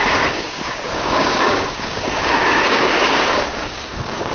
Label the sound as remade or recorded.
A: remade